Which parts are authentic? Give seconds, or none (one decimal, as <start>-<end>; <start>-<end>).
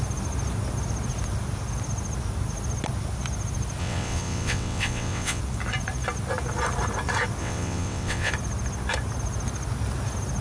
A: 0.0-3.8; 5.4-7.4; 8.3-10.4